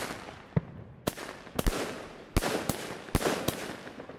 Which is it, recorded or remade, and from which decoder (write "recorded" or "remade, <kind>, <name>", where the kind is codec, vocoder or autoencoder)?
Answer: recorded